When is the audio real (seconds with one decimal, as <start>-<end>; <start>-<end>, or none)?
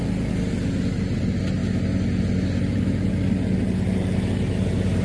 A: 0.0-5.0